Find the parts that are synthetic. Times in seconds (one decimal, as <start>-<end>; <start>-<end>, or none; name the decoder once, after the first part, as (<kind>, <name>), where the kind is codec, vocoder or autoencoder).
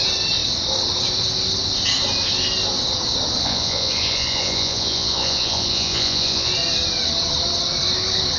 3.4-6.5 (vocoder, Vocos)